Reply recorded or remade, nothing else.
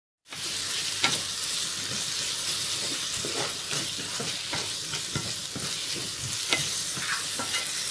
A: recorded